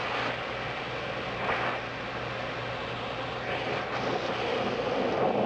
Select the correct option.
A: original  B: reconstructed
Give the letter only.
A